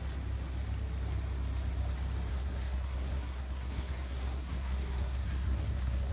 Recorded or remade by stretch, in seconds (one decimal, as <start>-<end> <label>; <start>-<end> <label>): 0.0-2.3 recorded; 2.3-6.1 remade